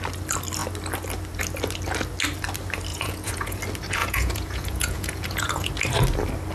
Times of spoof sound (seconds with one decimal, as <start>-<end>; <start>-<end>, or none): 2.9-3.6; 4.0-5.7